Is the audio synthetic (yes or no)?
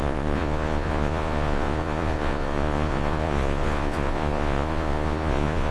yes